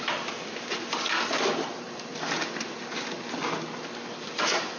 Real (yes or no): yes